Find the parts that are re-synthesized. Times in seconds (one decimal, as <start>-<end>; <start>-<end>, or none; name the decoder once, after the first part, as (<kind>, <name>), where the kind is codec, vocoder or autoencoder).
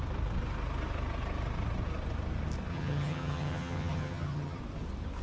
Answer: 2.7-4.6 (vocoder, HiFi-GAN)